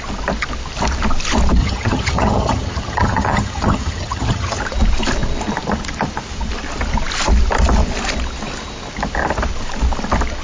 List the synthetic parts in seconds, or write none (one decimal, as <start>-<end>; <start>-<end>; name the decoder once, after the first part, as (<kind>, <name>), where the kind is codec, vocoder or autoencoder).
1.6-4.6 (vocoder, HiFi-GAN)